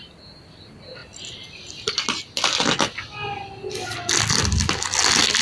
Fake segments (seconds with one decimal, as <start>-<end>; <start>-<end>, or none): none